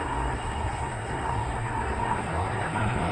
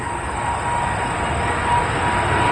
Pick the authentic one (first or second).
second